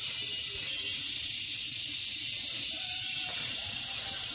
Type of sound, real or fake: fake